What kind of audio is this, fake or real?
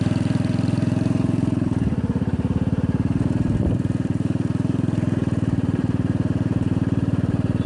fake